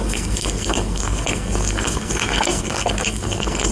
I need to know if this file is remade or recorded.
remade